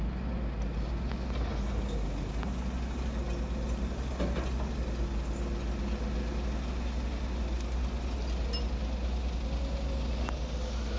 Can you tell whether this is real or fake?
real